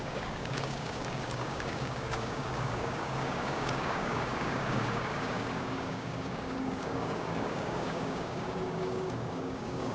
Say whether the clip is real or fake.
fake